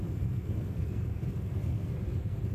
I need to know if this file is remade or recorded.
remade